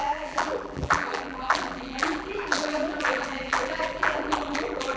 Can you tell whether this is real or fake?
fake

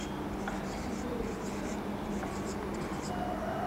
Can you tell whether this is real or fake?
fake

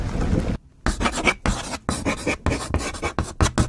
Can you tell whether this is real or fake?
real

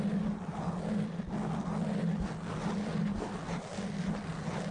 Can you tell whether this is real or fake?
real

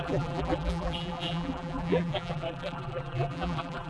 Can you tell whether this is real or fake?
fake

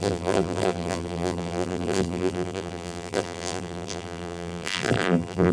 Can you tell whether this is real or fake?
fake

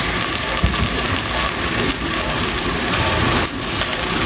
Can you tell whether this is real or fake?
fake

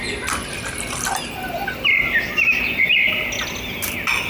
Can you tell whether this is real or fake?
real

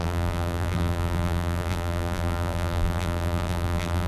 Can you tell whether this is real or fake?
fake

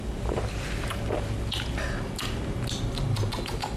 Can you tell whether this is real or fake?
real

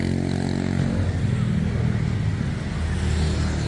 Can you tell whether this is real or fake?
real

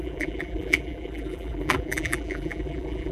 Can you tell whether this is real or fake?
fake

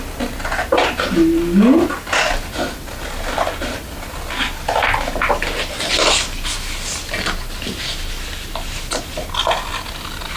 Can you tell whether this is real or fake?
real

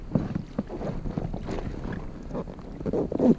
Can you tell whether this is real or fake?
real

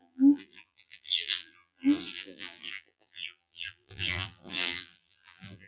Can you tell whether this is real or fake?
fake